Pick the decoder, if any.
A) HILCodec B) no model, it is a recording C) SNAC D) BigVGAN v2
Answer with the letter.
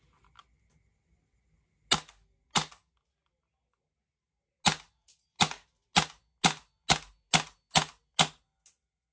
B